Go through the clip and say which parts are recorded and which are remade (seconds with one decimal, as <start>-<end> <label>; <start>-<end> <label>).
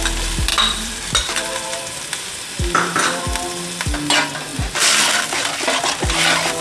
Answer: 0.0-0.5 recorded; 0.5-3.2 remade; 3.2-6.6 recorded